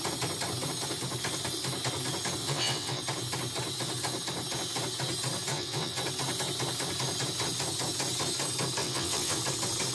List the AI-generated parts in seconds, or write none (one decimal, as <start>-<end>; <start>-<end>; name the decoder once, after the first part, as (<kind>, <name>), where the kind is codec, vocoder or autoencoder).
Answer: 2.4-3.0 (vocoder, WaveNeXt); 5.5-6.0; 8.8-9.4